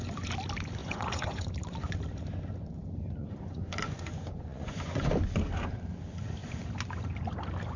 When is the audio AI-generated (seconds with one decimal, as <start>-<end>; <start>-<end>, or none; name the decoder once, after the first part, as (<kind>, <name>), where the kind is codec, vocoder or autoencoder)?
0.8-1.5 (vocoder, Vocos); 3.2-5.1

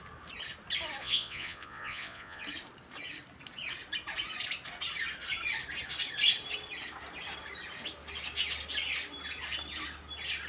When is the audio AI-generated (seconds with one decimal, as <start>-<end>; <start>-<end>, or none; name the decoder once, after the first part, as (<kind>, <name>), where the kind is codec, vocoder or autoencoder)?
1.0-2.4 (vocoder, Vocos)

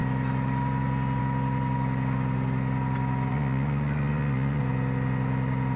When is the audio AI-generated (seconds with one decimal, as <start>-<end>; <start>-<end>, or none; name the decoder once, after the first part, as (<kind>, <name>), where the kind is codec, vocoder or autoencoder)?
3.3-4.6 (vocoder, Vocos)

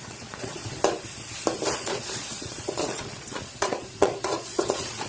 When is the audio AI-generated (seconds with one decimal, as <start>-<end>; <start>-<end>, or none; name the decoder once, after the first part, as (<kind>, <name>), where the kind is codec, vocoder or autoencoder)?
0.0-0.6 (vocoder, Vocos); 1.7-5.1

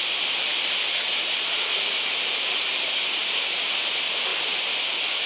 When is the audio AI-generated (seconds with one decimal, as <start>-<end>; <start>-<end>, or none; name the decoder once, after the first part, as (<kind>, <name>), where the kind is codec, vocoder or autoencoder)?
none

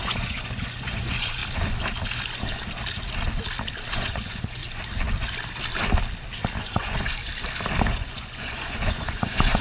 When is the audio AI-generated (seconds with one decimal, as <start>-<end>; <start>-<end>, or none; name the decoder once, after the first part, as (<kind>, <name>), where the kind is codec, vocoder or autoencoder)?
0.0-1.4 (vocoder, Vocos); 3.9-4.6; 6.6-7.3; 7.9-9.6

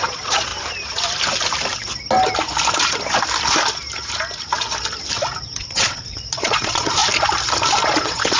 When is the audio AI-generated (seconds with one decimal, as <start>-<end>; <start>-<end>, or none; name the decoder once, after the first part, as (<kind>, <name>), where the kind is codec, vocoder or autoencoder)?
0.0-0.5 (vocoder, Vocos); 5.4-7.0; 8.0-8.4